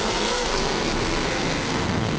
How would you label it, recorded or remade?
remade